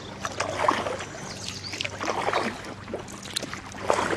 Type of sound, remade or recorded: recorded